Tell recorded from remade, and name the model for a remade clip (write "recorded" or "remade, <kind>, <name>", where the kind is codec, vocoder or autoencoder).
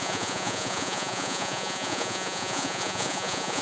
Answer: remade, vocoder, Vocos